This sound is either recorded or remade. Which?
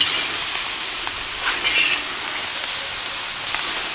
recorded